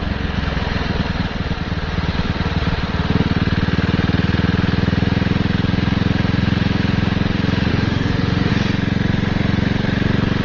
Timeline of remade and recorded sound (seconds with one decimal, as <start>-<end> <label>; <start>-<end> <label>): 0.0-7.7 recorded; 7.7-8.5 remade; 8.5-10.4 recorded